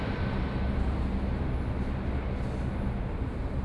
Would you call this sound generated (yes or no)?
no